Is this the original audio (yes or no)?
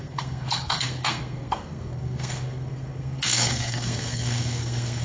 no